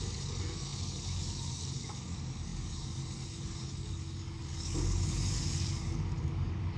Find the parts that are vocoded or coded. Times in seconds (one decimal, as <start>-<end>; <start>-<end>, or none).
0.0-6.8